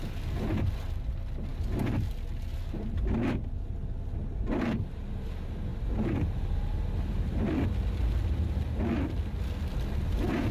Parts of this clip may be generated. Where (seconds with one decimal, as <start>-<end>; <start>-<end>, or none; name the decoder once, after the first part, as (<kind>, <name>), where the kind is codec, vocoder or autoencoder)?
none